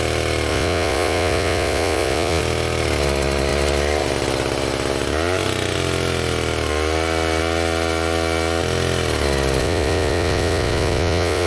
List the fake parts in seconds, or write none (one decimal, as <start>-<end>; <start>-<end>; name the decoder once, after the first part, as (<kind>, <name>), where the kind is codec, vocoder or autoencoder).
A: 0.5-2.4 (vocoder, Vocos); 9.6-11.5